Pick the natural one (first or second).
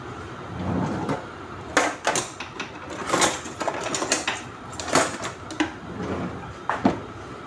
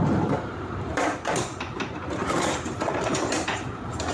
first